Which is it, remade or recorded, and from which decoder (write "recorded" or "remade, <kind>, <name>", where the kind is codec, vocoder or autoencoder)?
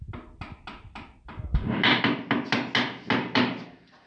recorded